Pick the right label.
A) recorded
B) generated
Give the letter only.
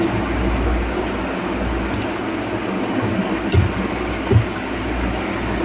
A